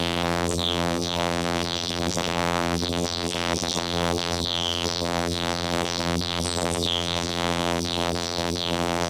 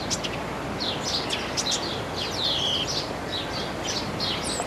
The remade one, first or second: first